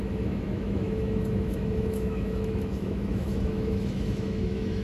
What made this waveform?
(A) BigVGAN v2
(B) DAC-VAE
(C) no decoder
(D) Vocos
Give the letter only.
B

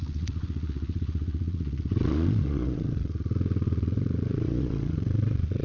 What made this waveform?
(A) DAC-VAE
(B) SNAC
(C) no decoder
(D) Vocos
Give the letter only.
D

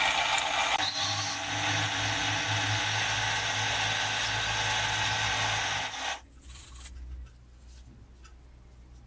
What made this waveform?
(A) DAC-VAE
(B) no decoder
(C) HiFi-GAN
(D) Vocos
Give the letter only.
B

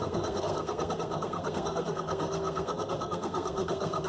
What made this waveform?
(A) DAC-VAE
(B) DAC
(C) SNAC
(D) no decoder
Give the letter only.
C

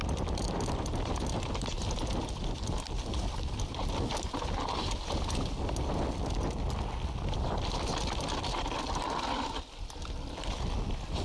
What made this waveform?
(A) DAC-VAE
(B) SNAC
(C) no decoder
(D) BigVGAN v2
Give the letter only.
C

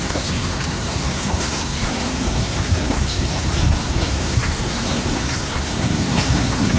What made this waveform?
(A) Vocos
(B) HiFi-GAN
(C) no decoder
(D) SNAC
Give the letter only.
D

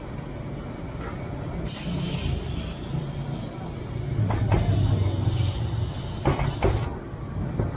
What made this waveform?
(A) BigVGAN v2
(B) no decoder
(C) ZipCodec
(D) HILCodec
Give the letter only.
B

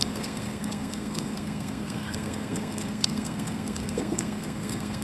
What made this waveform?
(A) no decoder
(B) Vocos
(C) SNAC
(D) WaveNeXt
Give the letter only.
C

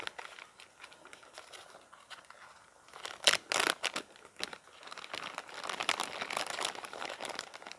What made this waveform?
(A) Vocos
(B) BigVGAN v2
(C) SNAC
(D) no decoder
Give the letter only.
D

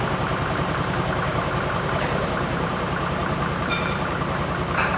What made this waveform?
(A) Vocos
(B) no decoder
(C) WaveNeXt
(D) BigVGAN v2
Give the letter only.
D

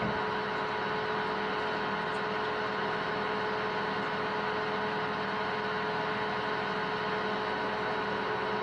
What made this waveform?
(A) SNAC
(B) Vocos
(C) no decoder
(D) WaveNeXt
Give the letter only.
C